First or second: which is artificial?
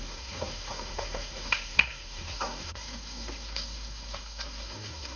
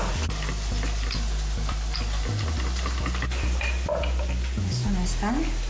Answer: first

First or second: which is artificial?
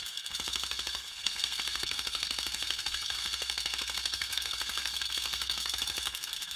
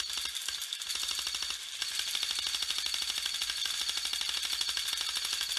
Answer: first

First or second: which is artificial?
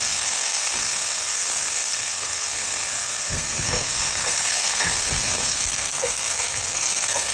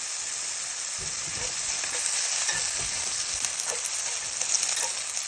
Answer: first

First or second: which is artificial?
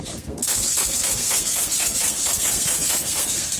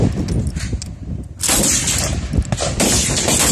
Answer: first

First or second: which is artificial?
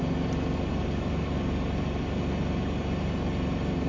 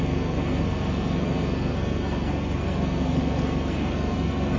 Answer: second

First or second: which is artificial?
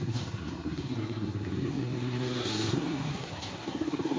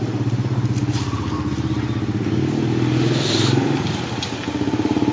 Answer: first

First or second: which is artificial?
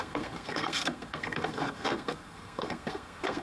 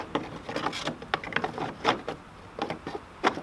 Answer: first